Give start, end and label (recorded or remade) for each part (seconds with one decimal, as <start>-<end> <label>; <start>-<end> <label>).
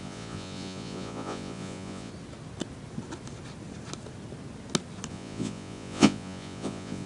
0.0-2.1 remade; 2.1-5.1 recorded; 5.1-7.1 remade